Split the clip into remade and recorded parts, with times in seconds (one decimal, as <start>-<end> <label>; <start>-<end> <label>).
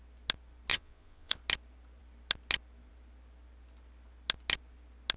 0.0-0.7 recorded; 0.7-1.4 remade; 1.4-5.2 recorded